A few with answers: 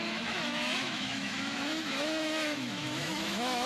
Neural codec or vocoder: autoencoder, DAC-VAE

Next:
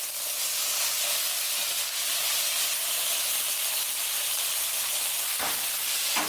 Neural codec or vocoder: none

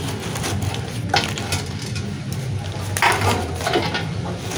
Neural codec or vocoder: none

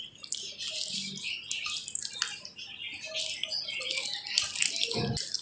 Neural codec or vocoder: none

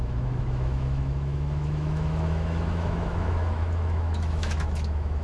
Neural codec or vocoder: autoencoder, DAC-VAE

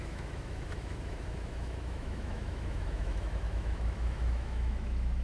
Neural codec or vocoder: autoencoder, DAC-VAE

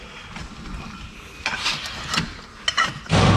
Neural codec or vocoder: none